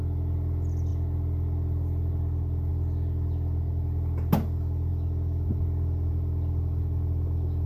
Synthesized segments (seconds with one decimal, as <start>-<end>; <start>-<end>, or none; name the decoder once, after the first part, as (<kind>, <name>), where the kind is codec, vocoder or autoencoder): none